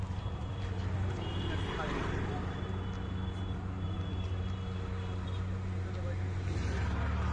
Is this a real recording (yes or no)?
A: yes